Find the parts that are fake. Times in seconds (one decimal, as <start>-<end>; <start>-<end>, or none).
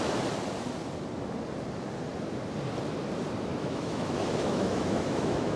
3.5-5.6